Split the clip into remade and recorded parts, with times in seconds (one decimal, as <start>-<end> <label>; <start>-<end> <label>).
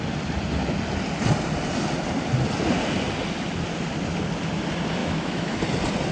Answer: 0.0-5.0 recorded; 5.0-5.6 remade; 5.6-6.1 recorded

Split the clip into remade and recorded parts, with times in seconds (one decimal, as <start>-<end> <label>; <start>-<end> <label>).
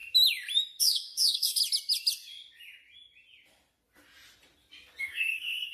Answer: 0.0-0.8 recorded; 0.8-1.6 remade; 1.6-5.0 recorded; 5.0-5.7 remade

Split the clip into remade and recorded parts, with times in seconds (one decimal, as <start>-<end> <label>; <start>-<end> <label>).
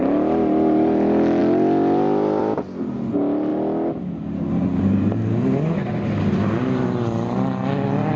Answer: 0.0-8.2 recorded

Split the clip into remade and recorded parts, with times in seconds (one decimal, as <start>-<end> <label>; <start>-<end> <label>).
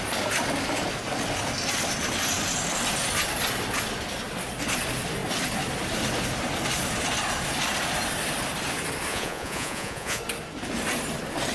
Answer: 0.0-9.1 recorded; 9.1-10.2 remade; 10.2-11.5 recorded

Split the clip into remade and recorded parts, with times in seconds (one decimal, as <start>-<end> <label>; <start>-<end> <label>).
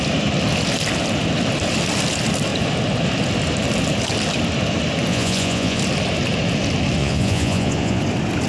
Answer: 0.0-5.1 recorded; 5.1-5.8 remade; 5.8-7.0 recorded; 7.0-8.0 remade; 8.0-8.5 recorded